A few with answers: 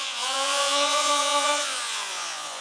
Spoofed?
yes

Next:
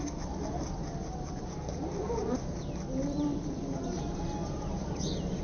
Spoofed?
no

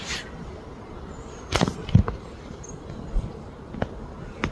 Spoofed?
no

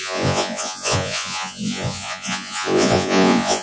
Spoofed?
yes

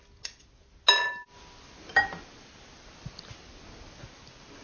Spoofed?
no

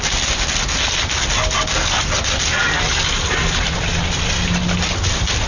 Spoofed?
no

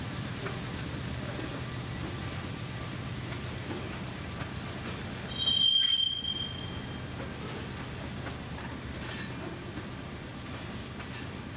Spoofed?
no